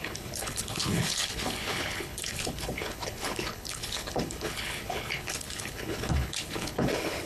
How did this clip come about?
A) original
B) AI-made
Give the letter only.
B